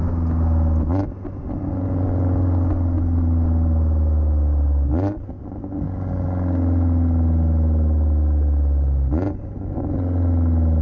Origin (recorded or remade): recorded